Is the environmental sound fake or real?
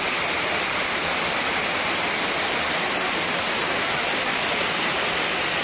real